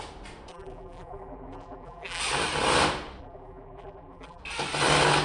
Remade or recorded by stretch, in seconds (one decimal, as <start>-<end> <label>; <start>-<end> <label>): 0.0-0.5 recorded; 0.5-2.2 remade; 2.2-3.2 recorded; 3.2-4.4 remade; 4.4-5.2 recorded